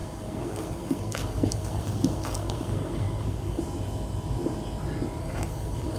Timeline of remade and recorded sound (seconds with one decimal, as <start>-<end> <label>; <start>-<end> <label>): 0.0-3.6 remade; 3.6-5.2 recorded; 5.2-6.0 remade